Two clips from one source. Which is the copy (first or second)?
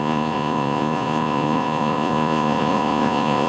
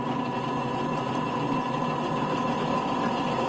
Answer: first